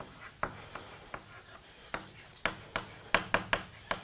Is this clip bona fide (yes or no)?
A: yes